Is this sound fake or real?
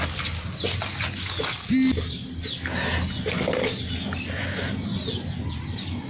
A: real